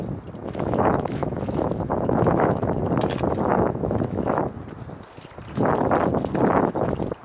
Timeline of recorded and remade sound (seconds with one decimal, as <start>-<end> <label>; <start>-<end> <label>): 0.0-0.4 recorded; 0.4-2.8 remade; 2.8-3.5 recorded; 3.5-4.4 remade; 4.4-7.2 recorded